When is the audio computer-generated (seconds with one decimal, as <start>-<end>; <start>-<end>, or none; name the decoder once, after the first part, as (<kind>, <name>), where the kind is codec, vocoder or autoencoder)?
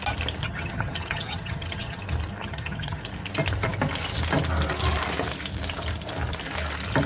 0.4-2.0 (vocoder, HiFi-GAN); 2.4-3.0